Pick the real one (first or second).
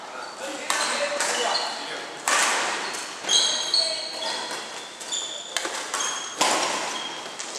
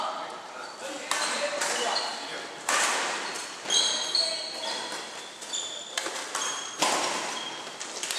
first